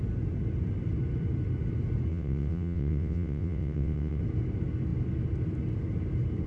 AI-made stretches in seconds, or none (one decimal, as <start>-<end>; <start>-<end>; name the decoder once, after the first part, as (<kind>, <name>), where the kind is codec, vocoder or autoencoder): 2.1-4.2 (vocoder, WaveNeXt)